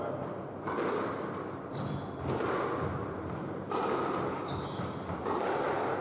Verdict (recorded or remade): recorded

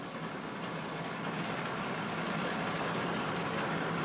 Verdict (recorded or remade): recorded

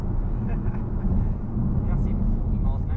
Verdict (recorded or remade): recorded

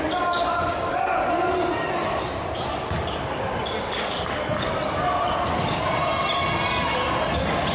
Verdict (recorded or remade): recorded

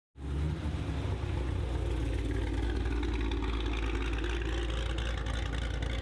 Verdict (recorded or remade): recorded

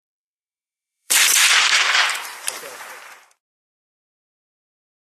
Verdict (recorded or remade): remade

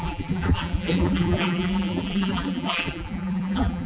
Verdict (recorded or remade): remade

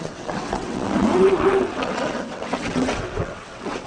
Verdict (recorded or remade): remade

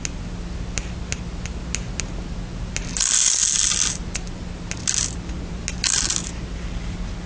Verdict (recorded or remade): recorded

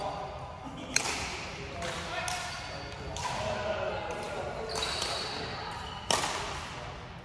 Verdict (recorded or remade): recorded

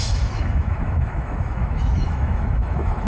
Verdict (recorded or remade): remade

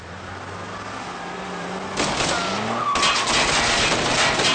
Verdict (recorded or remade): recorded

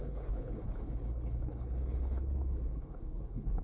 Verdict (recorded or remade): remade